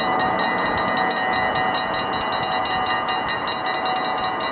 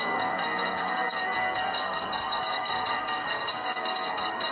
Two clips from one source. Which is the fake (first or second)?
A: second